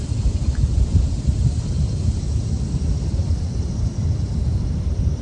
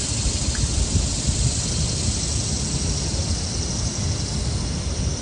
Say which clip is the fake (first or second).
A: first